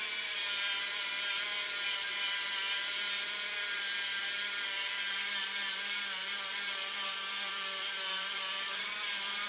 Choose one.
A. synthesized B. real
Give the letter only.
A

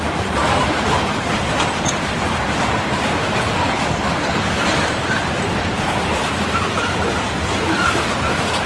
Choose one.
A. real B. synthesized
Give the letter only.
B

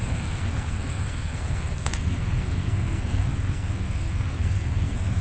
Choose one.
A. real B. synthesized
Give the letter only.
B